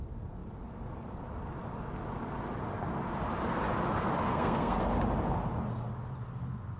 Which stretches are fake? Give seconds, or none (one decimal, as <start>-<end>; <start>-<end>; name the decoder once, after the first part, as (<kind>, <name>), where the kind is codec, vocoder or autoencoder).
4.3-4.8 (codec, SNAC)